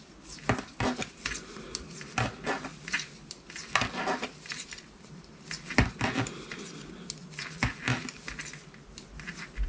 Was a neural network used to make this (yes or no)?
no